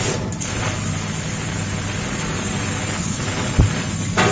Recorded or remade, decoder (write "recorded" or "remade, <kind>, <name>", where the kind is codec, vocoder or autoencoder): recorded